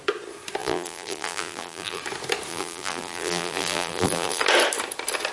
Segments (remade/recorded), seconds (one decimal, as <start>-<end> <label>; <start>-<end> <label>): 0.0-0.6 recorded; 0.6-2.0 remade; 2.0-2.5 recorded; 2.5-4.4 remade; 4.4-5.3 recorded